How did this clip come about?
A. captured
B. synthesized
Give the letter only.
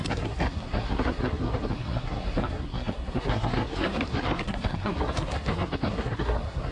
B